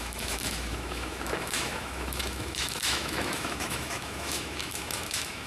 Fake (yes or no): yes